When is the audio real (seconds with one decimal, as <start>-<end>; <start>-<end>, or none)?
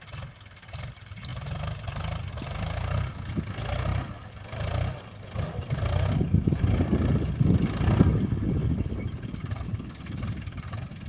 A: 0.0-11.1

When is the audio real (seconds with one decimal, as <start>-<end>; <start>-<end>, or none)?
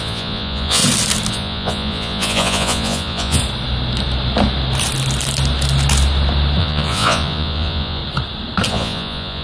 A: 0.8-1.3; 3.4-6.6; 8.0-8.7